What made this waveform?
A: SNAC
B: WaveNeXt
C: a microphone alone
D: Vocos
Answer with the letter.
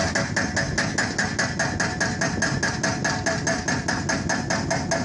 C